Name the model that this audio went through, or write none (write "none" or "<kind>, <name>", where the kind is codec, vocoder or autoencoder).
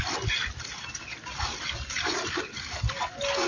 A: none